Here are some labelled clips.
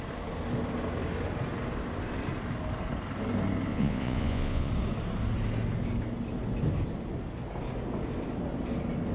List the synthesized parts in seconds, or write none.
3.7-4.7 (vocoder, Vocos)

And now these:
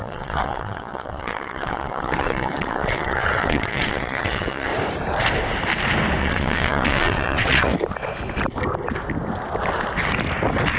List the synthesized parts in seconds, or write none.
0.0-4.7 (vocoder, WaveNeXt); 6.2-7.7

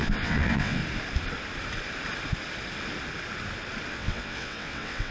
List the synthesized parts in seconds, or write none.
0.0-0.8 (vocoder, WaveNeXt); 3.9-5.1

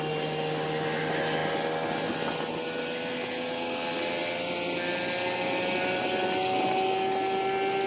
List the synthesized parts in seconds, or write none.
none

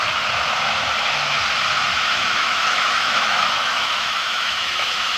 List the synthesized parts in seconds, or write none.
1.9-5.2 (autoencoder, DAC-VAE)

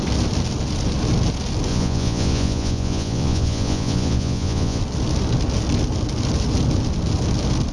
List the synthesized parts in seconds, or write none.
1.7-4.8 (vocoder, Vocos)

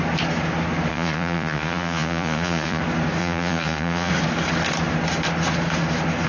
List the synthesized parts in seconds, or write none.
0.9-2.8 (vocoder, Vocos); 3.2-4.1

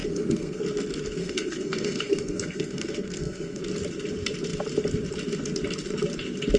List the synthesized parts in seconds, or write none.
0.0-0.6 (codec, SNAC); 1.2-3.6